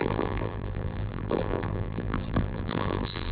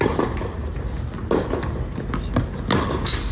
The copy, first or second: first